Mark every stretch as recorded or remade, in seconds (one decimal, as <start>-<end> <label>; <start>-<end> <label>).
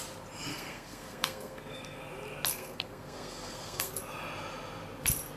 0.0-0.5 recorded; 0.5-2.0 remade; 2.0-2.5 recorded; 2.5-3.9 remade; 3.9-5.4 recorded